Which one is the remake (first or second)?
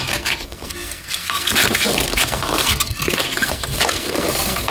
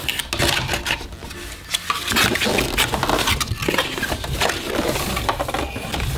first